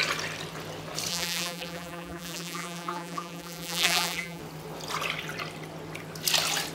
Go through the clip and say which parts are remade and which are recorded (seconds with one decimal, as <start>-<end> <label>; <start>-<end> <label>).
0.0-1.1 recorded; 1.1-4.4 remade; 4.4-6.7 recorded